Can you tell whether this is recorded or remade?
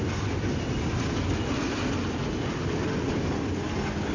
recorded